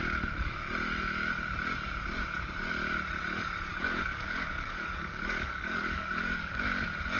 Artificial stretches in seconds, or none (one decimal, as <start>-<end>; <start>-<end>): 3.7-6.6